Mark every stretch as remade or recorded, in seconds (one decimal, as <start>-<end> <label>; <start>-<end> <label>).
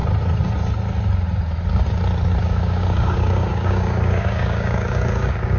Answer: 0.0-2.4 recorded; 2.4-5.6 remade